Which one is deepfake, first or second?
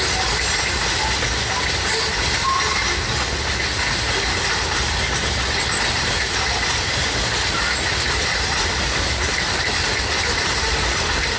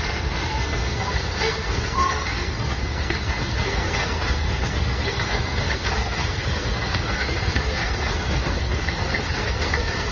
second